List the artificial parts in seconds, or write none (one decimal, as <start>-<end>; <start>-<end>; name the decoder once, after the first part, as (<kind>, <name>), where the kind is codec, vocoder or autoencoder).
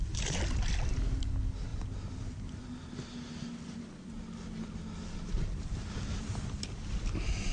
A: none